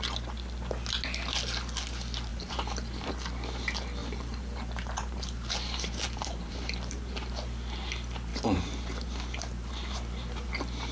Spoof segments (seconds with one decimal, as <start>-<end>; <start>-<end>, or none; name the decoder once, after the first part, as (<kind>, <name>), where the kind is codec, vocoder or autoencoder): 2.3-3.1 (vocoder, BigVGAN v2); 4.0-7.3; 8.3-10.5